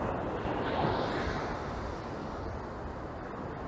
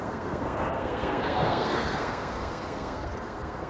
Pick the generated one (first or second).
second